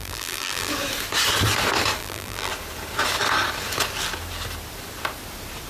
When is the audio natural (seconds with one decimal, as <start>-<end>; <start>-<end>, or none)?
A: 0.7-2.0; 2.5-5.7